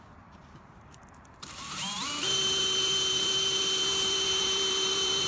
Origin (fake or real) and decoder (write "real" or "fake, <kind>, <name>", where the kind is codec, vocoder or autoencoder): fake, vocoder, BigVGAN v2